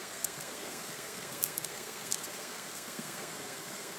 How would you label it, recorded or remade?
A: remade